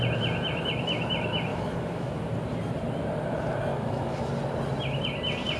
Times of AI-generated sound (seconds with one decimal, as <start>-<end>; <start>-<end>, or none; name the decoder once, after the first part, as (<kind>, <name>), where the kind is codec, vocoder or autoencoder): 1.5-2.1 (autoencoder, DAC-VAE); 3.7-4.3